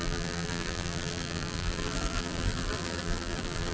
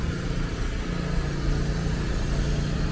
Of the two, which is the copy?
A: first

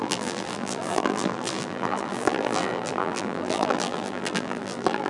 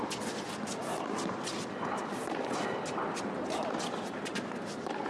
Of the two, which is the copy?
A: first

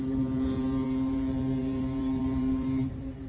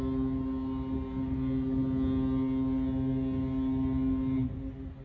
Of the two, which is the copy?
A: first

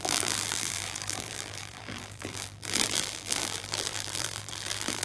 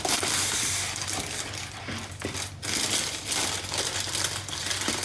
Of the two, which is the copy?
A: first